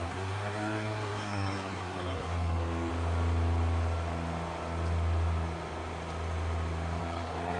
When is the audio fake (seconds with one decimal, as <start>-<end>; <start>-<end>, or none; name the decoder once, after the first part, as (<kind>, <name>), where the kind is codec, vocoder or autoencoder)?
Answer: 0.0-2.9 (codec, SNAC); 7.0-7.6